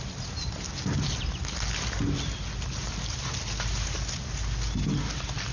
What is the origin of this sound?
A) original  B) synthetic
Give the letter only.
A